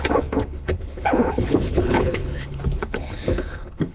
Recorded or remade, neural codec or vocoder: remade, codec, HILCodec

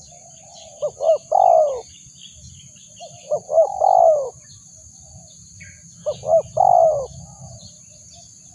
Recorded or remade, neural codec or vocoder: recorded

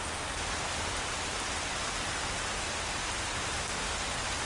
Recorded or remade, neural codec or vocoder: recorded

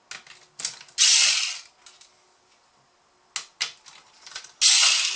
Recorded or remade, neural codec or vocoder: recorded